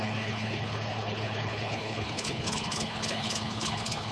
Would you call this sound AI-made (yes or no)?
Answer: yes